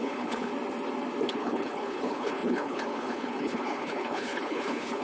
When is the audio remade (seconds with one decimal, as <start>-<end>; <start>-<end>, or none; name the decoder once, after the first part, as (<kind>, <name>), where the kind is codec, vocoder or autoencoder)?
0.0-0.5 (codec, HILCodec); 1.3-5.0